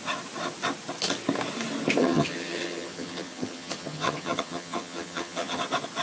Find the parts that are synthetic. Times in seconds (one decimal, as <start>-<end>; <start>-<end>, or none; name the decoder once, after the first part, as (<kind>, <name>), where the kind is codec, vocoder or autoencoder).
2.0-5.6 (vocoder, HiFi-GAN)

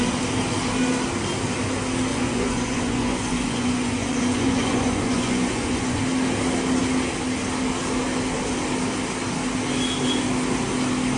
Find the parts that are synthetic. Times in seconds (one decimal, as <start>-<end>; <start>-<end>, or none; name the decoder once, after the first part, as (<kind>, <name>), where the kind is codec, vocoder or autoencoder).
2.1-6.0 (vocoder, Vocos)

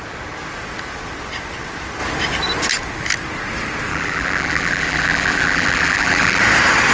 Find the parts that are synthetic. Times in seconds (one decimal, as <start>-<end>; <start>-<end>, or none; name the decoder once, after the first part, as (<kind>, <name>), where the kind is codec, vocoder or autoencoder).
3.9-6.4 (vocoder, BigVGAN v2)

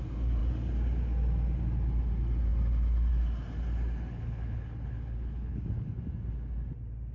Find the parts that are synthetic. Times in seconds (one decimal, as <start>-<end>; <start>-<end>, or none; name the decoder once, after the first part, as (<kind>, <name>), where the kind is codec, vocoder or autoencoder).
4.1-6.0 (codec, HILCodec)

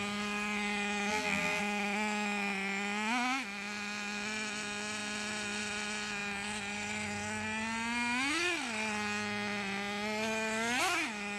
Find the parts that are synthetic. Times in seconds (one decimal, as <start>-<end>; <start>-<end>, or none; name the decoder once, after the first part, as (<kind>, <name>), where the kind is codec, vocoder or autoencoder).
1.1-1.6 (vocoder, BigVGAN v2)

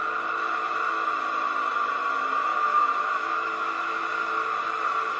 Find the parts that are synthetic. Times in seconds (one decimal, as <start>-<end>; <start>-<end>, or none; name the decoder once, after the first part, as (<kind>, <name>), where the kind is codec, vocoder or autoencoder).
2.5-4.0 (autoencoder, DAC-VAE)

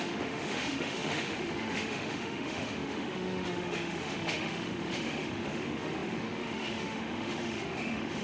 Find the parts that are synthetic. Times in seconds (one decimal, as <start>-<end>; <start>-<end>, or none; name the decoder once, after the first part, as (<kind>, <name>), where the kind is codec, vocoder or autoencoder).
0.0-8.2 (autoencoder, DAC-VAE)

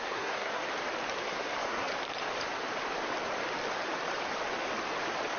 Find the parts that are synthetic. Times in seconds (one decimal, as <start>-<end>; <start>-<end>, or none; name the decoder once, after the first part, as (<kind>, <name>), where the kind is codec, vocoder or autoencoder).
0.0-0.6 (codec, SNAC); 1.2-1.9